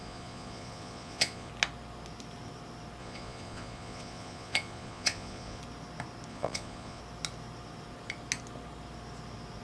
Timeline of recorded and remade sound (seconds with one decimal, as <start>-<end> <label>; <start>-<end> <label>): 0.0-1.5 remade; 1.5-3.0 recorded; 3.0-5.6 remade; 5.6-6.3 recorded; 6.3-7.0 remade; 7.0-9.6 recorded